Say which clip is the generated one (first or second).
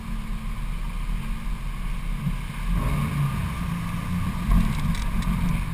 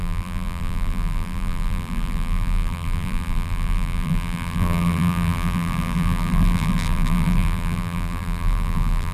second